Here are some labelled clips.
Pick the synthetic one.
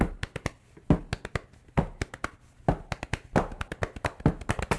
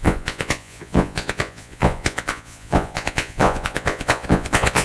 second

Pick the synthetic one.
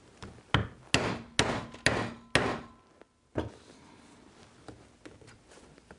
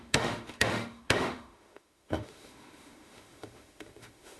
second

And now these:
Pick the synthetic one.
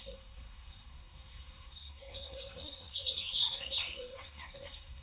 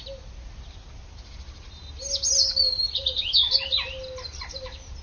first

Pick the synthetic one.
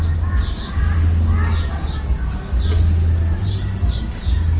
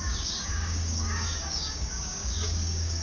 second